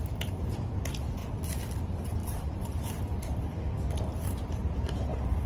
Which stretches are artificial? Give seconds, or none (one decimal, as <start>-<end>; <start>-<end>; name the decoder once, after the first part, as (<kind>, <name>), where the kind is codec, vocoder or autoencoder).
2.2-2.8 (vocoder, BigVGAN v2); 4.1-5.5